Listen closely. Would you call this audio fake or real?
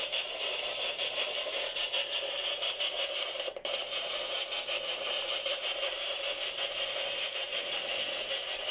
fake